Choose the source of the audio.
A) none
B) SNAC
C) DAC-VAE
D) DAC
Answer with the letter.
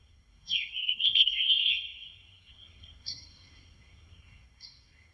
B